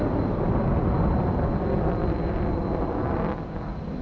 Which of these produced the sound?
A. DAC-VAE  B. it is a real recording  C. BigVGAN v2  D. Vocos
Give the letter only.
B